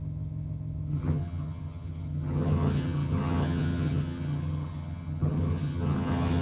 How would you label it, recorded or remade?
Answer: remade